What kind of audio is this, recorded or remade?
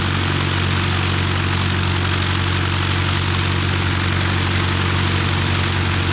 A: recorded